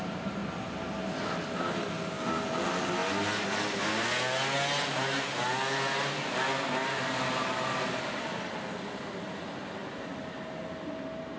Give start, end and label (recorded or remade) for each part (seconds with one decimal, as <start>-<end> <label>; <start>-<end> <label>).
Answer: 0.0-11.4 recorded